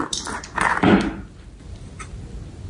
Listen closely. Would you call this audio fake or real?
real